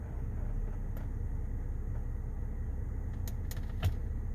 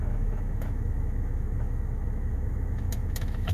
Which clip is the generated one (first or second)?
second